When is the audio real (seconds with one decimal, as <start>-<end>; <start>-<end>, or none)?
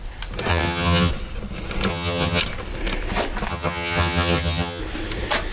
0.0-0.5; 1.1-1.9; 2.4-3.5; 4.8-5.5